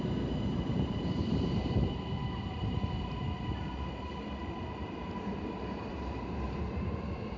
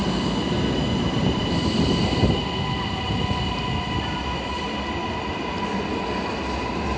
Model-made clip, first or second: first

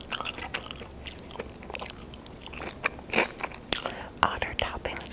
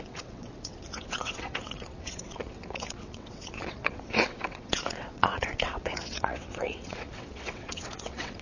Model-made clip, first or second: second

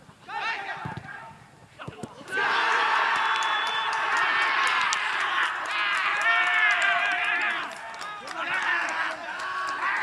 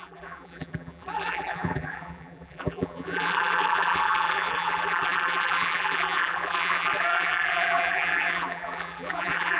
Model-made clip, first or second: second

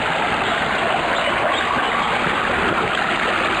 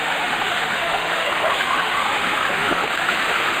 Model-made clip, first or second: second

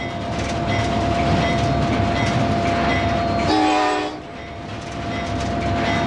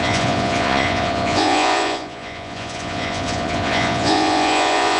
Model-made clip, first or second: second